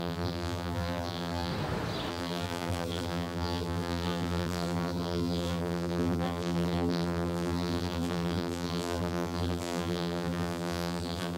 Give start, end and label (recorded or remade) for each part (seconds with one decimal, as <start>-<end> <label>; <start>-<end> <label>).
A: 0.0-1.5 remade; 1.5-2.1 recorded; 2.1-11.4 remade